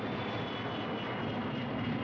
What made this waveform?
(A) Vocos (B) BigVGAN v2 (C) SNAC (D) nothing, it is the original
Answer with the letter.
D